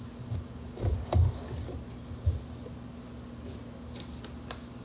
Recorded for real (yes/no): yes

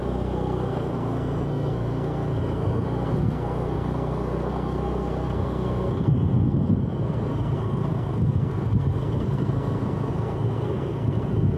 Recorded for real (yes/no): no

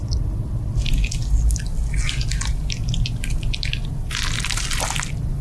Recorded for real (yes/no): yes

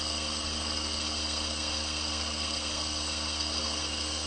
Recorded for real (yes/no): no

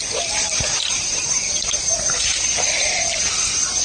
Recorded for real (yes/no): yes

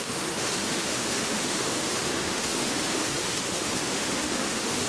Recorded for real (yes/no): no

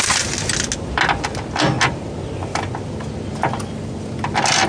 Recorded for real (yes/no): yes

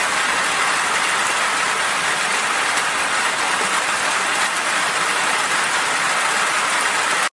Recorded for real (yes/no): yes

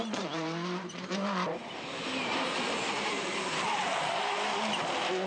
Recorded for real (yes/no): no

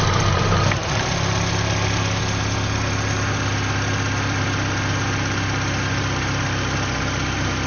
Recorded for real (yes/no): yes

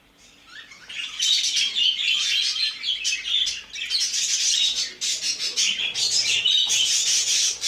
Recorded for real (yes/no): yes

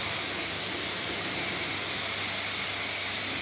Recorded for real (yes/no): yes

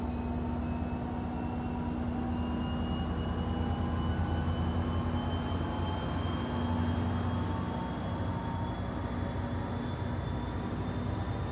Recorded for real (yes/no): yes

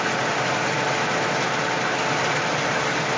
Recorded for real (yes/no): yes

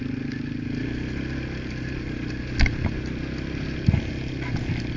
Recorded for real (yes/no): yes